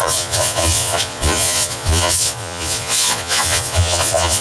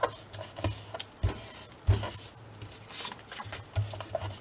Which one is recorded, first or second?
second